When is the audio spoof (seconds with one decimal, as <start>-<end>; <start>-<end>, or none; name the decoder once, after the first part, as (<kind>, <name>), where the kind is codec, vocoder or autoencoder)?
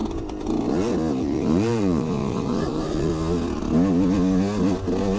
1.2-3.1 (vocoder, Vocos)